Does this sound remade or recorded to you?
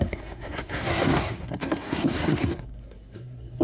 remade